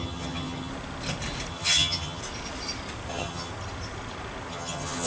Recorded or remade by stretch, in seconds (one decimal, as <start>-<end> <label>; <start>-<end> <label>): 0.0-0.7 remade; 0.7-1.5 recorded; 1.5-2.2 remade; 2.2-3.1 recorded; 3.1-3.5 remade; 3.5-4.5 recorded; 4.5-5.1 remade